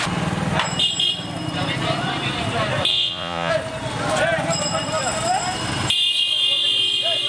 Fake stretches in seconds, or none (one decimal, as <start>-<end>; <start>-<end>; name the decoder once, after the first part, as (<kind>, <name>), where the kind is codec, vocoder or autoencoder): 2.9-3.5 (vocoder, Vocos)